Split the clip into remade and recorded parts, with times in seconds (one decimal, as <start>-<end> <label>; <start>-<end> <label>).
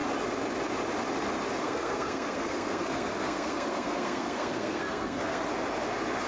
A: 0.0-1.6 recorded; 1.6-5.4 remade; 5.4-6.3 recorded